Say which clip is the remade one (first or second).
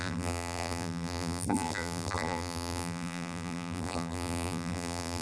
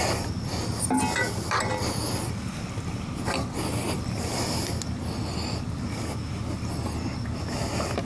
first